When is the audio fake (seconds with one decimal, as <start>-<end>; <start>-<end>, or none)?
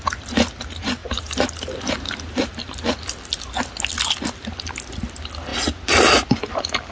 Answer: 1.0-2.5